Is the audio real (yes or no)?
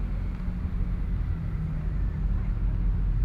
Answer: yes